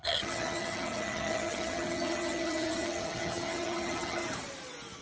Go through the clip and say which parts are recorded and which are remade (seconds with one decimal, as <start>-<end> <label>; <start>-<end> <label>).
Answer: 0.0-4.2 remade; 4.2-5.0 recorded